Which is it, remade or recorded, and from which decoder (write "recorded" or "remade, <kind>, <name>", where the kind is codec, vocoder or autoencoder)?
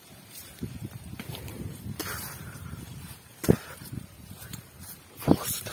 remade, vocoder, BigVGAN v2